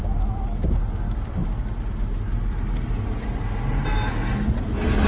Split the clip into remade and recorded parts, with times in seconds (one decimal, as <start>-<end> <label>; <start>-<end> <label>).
0.0-5.1 recorded